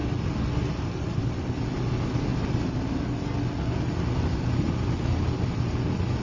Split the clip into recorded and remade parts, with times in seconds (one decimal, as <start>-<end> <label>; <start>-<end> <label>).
0.0-6.2 recorded

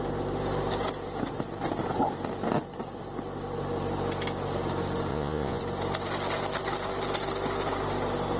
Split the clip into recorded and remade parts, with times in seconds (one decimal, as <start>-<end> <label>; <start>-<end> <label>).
0.0-5.1 recorded; 5.1-5.6 remade; 5.6-8.4 recorded

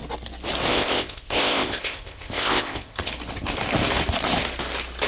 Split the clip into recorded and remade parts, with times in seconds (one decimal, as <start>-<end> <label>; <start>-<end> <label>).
0.0-0.7 recorded; 0.7-3.1 remade; 3.1-5.1 recorded

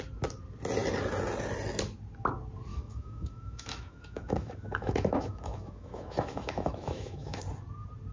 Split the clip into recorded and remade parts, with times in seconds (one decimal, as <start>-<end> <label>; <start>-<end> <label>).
0.0-2.7 recorded; 2.7-7.4 remade; 7.4-8.1 recorded

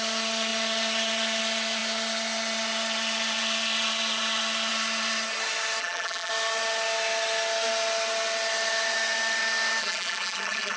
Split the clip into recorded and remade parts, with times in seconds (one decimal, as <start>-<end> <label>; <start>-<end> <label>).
0.0-5.8 recorded; 5.8-6.3 remade; 6.3-9.8 recorded; 9.8-10.8 remade

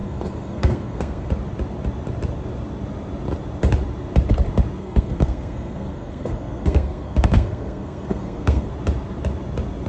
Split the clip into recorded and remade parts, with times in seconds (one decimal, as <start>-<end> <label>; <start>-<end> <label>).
0.0-1.3 remade; 1.3-4.8 recorded; 4.8-8.7 remade; 8.7-9.9 recorded